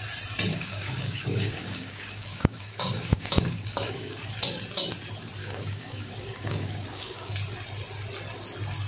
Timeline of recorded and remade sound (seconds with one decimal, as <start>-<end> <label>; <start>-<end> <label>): 0.0-0.5 recorded; 0.5-4.2 remade; 4.2-5.4 recorded; 5.4-7.3 remade; 7.3-8.9 recorded